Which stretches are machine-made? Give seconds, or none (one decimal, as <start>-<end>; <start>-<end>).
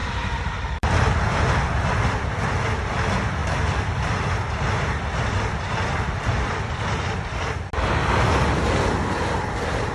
0.0-2.9; 3.4-7.7